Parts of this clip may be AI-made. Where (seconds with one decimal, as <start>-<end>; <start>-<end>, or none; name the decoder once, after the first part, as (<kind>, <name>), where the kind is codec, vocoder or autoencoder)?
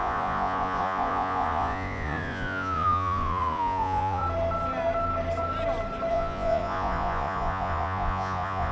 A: 0.0-4.2 (vocoder, Vocos); 6.1-8.7